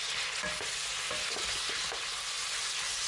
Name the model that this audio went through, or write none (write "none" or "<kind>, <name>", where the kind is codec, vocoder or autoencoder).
none